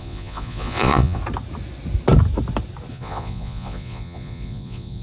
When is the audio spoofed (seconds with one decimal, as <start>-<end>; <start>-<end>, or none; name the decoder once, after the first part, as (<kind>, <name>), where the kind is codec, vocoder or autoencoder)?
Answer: 0.0-1.2 (vocoder, Vocos); 2.9-5.0